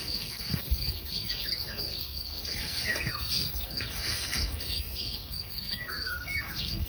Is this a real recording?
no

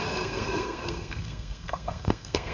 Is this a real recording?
no